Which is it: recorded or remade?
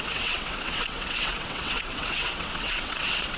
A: remade